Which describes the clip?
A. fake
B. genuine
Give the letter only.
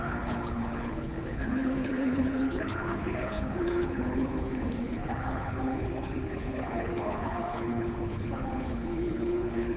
A